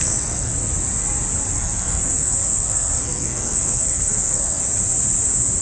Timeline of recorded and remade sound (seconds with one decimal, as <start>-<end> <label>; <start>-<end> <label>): 0.0-0.5 remade; 0.5-1.5 recorded; 1.5-4.6 remade; 4.6-5.6 recorded